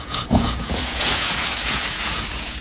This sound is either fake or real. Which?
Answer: fake